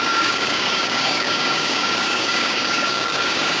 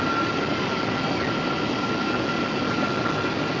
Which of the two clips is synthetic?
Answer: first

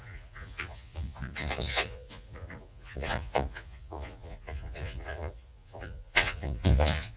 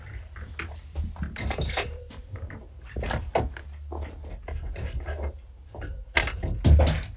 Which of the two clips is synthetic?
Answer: first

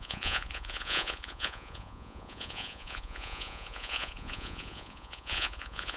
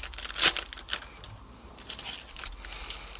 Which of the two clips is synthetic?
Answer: first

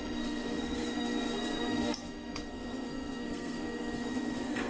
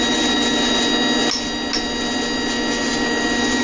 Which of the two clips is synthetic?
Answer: first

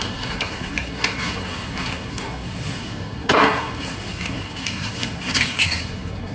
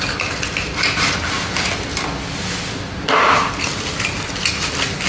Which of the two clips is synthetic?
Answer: first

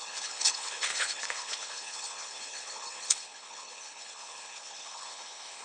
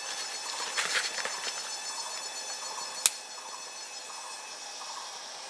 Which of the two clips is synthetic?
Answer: first